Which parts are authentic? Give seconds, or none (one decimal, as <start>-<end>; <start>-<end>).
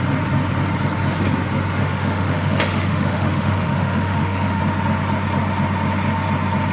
0.0-1.8; 4.6-6.7